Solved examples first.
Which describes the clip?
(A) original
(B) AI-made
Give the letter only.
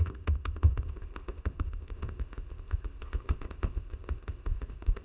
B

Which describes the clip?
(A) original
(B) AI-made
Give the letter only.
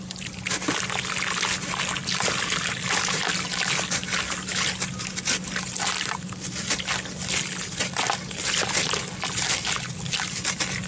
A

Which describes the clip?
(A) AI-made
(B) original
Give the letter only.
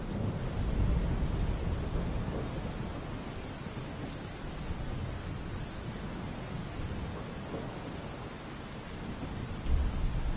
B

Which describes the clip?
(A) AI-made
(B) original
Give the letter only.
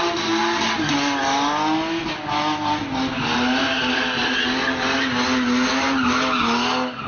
B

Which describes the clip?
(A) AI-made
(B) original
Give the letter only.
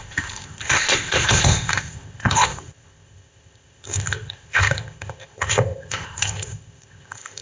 A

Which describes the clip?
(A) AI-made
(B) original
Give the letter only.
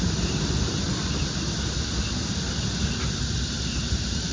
B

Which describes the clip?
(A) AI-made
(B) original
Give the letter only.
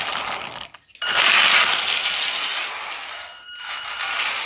B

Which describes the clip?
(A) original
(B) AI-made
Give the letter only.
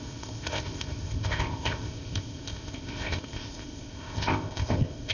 B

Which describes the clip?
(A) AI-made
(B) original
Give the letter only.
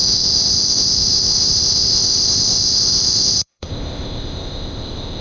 A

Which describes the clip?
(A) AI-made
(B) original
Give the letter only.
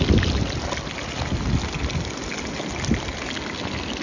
B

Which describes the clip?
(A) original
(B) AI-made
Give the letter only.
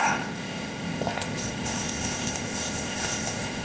B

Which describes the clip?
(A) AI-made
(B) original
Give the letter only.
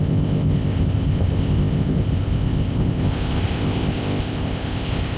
A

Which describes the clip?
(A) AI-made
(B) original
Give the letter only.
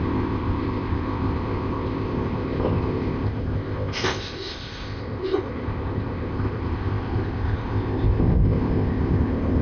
A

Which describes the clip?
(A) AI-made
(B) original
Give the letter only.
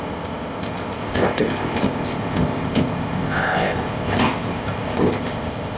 A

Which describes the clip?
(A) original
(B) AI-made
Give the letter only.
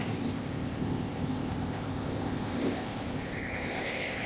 B